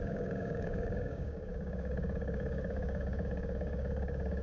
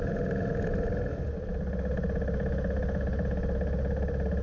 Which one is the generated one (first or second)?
first